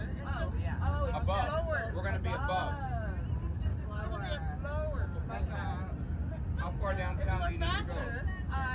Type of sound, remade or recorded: recorded